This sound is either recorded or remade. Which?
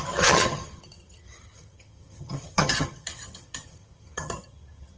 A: remade